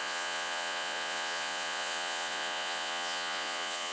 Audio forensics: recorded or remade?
remade